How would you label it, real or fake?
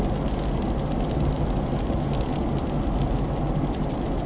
real